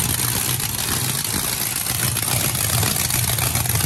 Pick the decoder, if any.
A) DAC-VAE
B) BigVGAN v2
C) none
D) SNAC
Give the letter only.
C